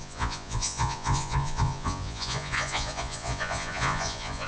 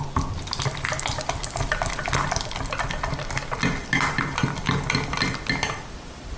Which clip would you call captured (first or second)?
second